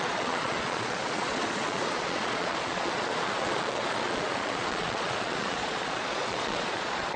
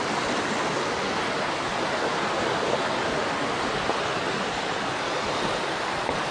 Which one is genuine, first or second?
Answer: second